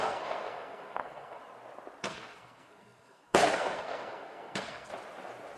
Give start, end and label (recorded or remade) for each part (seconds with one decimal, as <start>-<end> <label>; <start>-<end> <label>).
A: 0.0-1.4 remade; 1.4-2.0 recorded; 2.0-4.9 remade; 4.9-5.6 recorded